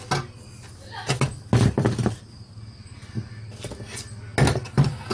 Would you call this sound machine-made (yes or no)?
no